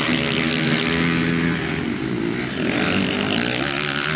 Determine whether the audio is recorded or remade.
recorded